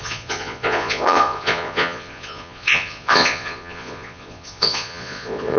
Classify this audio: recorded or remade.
remade